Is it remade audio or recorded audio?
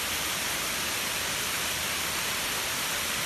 recorded